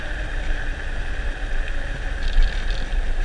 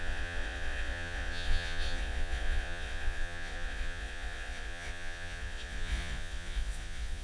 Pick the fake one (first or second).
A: second